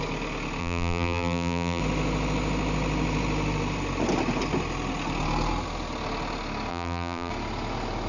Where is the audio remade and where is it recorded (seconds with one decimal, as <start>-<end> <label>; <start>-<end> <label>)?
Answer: 0.0-0.6 recorded; 0.6-1.8 remade; 1.8-6.7 recorded; 6.7-7.3 remade; 7.3-8.1 recorded